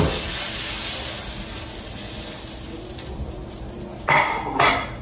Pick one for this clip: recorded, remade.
recorded